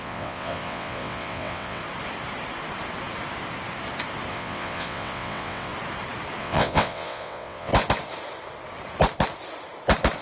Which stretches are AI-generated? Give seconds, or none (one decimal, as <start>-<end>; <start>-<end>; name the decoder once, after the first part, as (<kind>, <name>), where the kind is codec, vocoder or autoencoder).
0.0-1.8 (vocoder, WaveNeXt); 4.3-5.7; 6.4-7.7